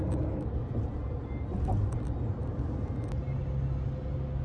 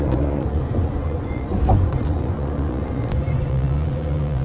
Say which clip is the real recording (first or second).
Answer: first